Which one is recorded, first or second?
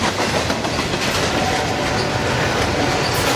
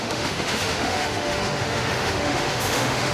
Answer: first